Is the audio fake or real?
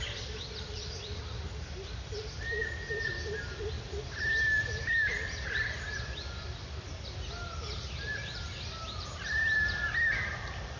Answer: real